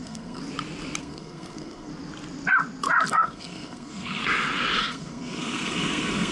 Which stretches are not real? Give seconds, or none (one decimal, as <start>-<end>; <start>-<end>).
0.0-0.4; 1.0-1.9; 3.1-4.2; 4.8-6.3